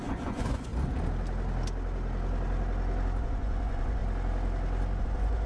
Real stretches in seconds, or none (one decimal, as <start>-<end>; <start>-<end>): 0.7-3.2; 4.0-5.0